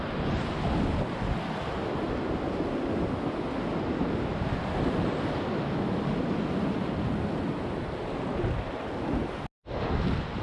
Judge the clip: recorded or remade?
recorded